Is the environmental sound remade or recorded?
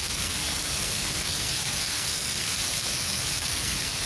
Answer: remade